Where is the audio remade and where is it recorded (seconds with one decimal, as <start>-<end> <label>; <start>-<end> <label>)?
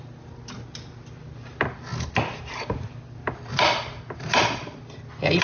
0.0-5.4 recorded